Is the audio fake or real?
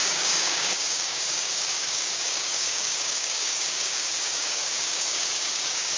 fake